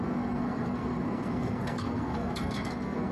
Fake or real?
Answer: fake